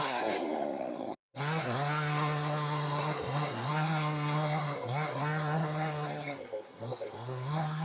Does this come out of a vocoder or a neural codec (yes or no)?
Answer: yes